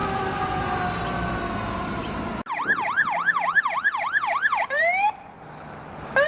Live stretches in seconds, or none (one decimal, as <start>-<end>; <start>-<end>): 0.0-2.0; 5.1-6.3